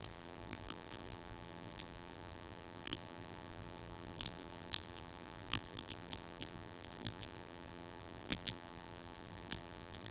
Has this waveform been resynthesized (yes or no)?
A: yes